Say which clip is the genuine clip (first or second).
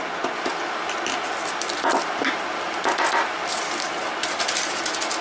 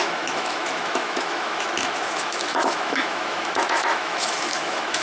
first